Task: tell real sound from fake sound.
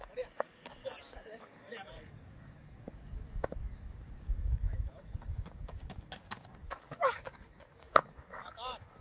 fake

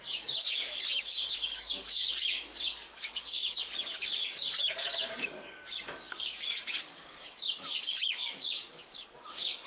fake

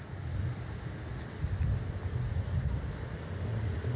real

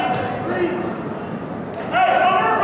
real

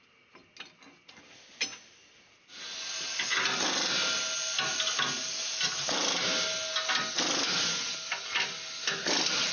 real